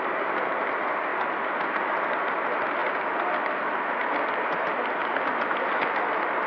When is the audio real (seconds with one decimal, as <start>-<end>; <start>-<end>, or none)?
0.0-6.5

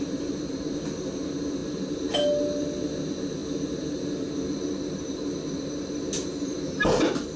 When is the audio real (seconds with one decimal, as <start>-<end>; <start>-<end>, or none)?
0.0-7.4

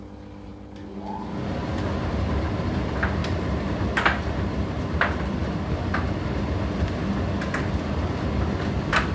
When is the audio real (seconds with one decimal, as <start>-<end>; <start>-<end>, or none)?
0.0-3.2; 4.8-9.1